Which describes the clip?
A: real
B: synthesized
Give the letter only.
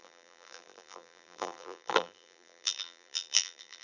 B